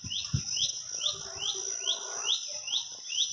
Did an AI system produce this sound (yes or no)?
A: no